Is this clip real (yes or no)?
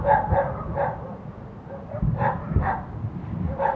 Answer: yes